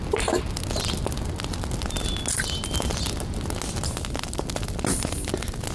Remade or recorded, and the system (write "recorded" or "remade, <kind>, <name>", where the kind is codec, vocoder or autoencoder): recorded